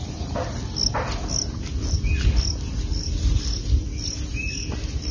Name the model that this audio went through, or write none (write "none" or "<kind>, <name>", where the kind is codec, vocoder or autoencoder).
none